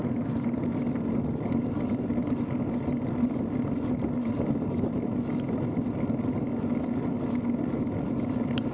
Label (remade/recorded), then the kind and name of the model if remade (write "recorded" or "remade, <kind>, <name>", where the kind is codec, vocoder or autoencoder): recorded